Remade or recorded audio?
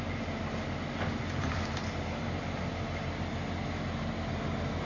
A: recorded